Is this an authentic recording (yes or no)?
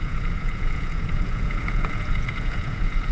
no